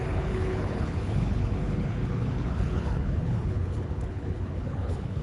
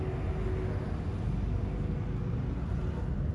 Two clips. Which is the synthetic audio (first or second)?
first